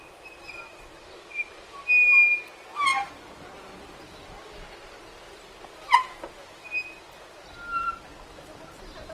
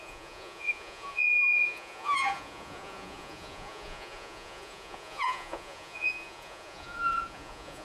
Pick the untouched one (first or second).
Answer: first